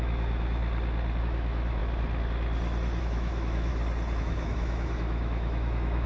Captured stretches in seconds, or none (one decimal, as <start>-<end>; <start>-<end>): 0.6-1.2; 1.8-3.0; 3.7-4.2